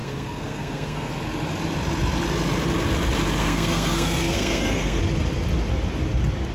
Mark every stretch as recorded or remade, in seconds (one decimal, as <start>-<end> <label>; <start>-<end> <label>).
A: 0.0-1.1 remade; 1.1-3.4 recorded; 3.4-5.0 remade; 5.0-6.5 recorded